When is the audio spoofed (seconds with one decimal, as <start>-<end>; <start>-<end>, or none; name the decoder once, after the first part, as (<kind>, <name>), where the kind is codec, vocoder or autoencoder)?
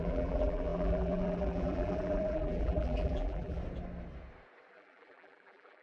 0.0-3.6 (vocoder, BigVGAN v2); 4.7-5.8